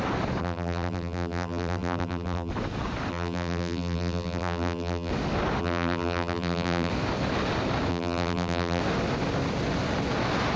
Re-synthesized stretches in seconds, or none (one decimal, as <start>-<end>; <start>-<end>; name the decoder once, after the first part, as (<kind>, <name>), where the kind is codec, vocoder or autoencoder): 0.4-2.5 (vocoder, BigVGAN v2); 3.1-5.1; 5.6-6.9; 7.9-8.8